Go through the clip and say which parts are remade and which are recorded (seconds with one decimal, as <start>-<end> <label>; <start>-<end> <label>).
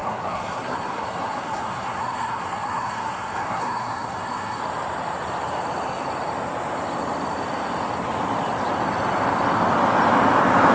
0.0-4.6 remade; 4.6-10.7 recorded